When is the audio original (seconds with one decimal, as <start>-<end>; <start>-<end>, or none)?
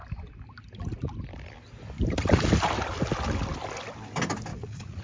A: 0.0-4.5